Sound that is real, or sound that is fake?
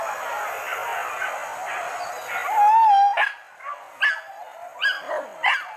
real